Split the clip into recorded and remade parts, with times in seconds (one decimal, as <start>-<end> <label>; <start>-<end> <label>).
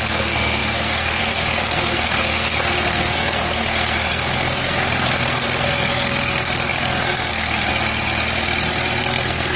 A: 0.0-7.7 remade; 7.7-9.0 recorded; 9.0-9.6 remade